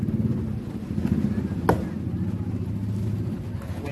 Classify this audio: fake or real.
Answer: real